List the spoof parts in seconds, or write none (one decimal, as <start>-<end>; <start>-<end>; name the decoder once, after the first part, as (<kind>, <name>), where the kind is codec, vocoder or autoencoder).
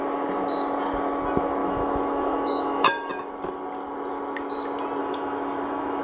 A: 1.6-3.1 (autoencoder, DAC-VAE); 5.0-6.0